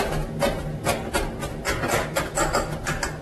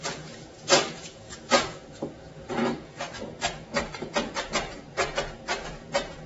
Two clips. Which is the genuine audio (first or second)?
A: first